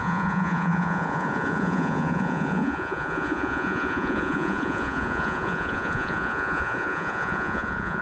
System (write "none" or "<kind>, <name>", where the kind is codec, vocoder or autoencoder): vocoder, Vocos